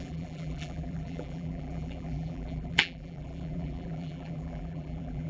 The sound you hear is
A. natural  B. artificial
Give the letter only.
B